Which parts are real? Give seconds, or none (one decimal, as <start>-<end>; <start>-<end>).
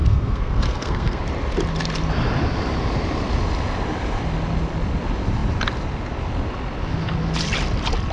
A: 1.2-8.1